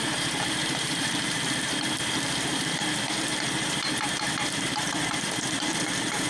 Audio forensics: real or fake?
fake